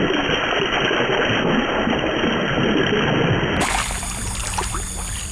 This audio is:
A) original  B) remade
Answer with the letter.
A